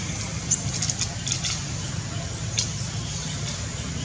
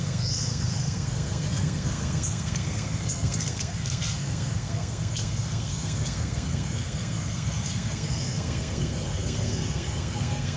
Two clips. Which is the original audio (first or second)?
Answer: first